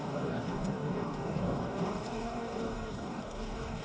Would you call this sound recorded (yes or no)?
no